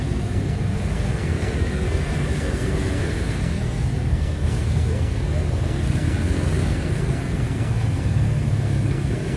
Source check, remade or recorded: remade